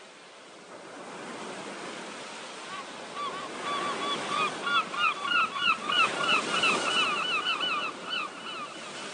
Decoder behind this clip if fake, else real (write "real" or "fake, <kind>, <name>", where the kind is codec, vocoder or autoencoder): real